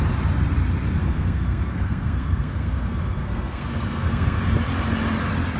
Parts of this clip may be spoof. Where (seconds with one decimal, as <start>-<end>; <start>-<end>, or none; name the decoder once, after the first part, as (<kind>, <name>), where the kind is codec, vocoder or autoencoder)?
1.0-4.4 (codec, SNAC)

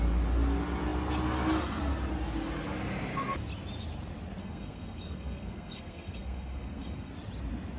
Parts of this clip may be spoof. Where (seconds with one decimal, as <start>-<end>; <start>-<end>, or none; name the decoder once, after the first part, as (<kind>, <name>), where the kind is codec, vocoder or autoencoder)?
4.4-7.1 (codec, SNAC)

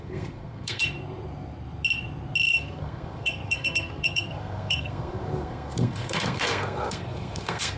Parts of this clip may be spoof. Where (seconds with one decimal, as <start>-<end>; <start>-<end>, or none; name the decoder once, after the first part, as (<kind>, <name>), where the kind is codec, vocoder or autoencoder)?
0.0-0.8 (codec, SNAC); 2.5-7.8

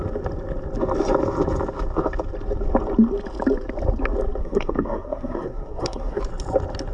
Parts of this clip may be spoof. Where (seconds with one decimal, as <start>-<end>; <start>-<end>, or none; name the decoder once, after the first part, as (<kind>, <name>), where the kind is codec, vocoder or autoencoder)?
4.4-6.2 (codec, SNAC)

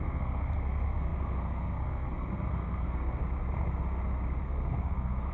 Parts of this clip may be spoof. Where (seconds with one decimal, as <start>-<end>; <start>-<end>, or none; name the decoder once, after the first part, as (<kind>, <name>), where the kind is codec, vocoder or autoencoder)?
0.0-3.2 (codec, SNAC); 4.4-5.3

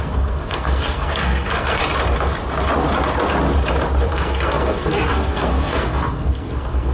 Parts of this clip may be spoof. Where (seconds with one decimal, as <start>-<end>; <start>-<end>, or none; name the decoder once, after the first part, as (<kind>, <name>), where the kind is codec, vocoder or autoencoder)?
0.0-1.8 (codec, SNAC); 4.1-6.9

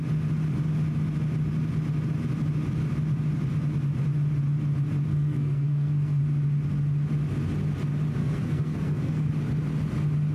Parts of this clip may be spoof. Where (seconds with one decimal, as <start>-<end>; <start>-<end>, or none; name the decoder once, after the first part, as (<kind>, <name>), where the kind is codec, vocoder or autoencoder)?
5.1-6.2 (codec, SNAC); 8.2-9.3